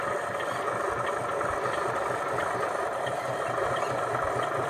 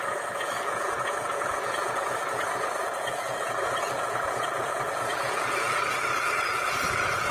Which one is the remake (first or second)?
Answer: second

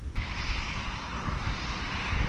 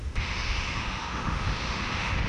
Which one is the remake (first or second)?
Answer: second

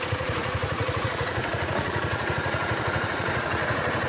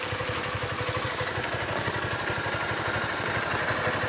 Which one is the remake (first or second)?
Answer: first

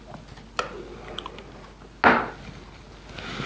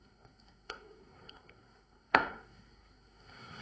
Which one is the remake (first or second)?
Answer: second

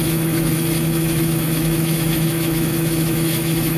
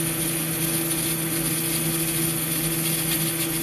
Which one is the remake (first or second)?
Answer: first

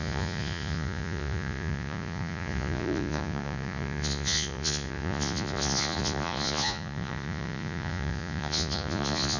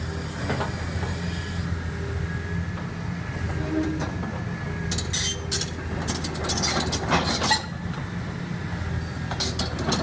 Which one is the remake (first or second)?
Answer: first